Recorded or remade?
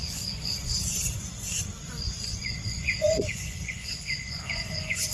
remade